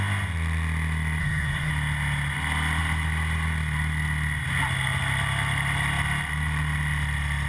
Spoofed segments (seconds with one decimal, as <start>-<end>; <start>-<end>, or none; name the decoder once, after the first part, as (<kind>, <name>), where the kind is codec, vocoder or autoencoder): 1.2-1.7 (codec, SNAC)